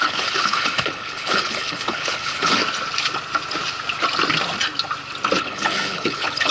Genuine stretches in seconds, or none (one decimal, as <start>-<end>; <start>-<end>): 2.6-5.4

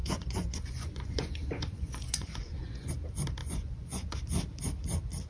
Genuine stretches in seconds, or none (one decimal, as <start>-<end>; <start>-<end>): 2.9-3.4; 4.2-5.3

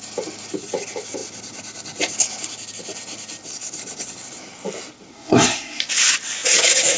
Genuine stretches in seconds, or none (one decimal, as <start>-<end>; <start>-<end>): 0.0-5.1; 5.8-7.0

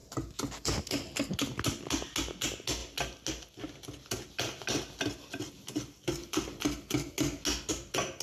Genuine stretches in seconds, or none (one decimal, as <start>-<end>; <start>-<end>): 0.0-8.2

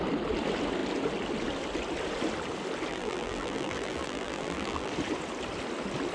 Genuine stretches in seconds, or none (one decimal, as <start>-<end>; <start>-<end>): 0.0-2.9; 4.9-6.1

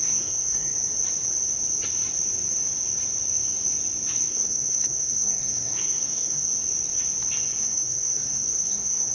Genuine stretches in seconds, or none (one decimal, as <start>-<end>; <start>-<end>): 0.7-4.2; 6.5-7.6